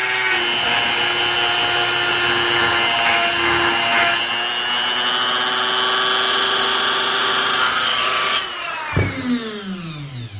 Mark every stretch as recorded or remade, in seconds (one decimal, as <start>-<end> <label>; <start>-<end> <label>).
0.0-6.3 recorded; 6.3-8.8 remade; 8.8-10.4 recorded